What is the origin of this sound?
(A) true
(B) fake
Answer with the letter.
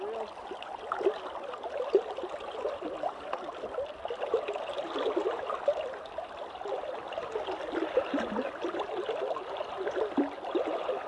A